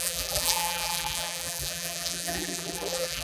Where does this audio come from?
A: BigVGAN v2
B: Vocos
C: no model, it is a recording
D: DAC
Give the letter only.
A